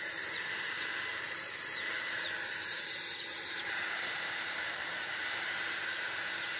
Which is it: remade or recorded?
remade